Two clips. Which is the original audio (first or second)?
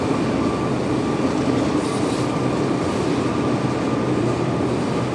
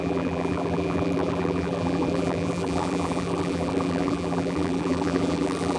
first